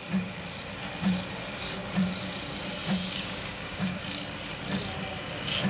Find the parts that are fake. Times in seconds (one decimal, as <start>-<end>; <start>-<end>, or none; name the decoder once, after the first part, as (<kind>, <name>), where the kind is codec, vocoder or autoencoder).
2.8-4.0 (codec, DAC)